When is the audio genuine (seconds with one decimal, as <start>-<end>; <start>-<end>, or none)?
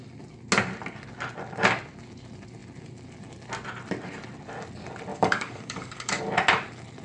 0.0-5.1; 6.2-7.0